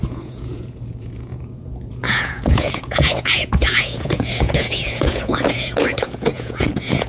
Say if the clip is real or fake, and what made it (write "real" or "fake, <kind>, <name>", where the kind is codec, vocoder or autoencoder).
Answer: fake, vocoder, Vocos